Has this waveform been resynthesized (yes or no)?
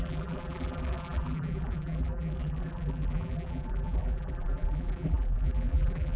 yes